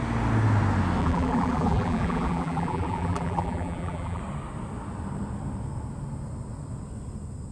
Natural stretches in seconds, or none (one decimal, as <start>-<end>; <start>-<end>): 0.0-1.0; 4.2-7.5